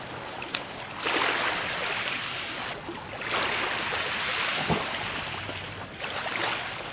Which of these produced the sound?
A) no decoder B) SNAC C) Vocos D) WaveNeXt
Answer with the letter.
A